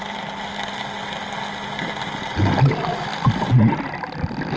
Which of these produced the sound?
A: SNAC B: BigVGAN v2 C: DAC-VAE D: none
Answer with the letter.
D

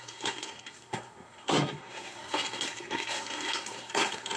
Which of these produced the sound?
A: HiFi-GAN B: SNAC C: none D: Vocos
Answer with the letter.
B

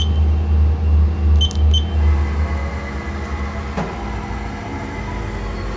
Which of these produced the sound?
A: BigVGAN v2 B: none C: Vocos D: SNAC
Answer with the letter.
B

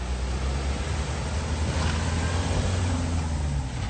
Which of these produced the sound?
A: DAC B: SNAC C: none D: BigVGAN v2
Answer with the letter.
C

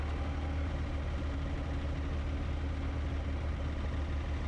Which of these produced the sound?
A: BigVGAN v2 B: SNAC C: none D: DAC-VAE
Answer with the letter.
C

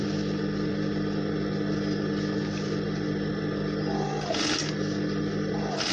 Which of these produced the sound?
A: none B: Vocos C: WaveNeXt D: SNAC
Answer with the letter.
A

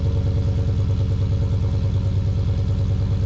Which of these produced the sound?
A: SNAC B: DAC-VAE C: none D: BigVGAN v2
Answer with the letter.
C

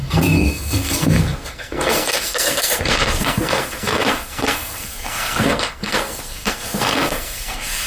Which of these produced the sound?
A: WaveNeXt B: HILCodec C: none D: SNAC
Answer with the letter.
D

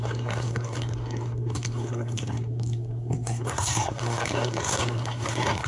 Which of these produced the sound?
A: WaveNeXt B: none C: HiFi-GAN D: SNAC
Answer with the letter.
D